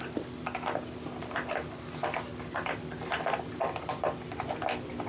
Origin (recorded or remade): recorded